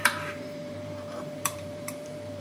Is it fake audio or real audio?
fake